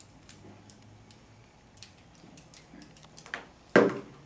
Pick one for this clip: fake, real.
real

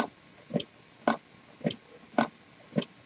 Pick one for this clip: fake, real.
real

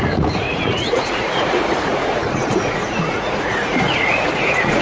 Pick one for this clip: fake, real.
fake